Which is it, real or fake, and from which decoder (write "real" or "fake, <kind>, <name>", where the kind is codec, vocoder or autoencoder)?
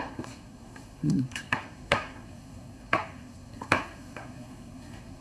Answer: fake, codec, SNAC